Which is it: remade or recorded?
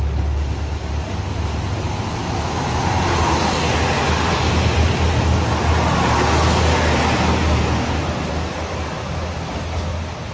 recorded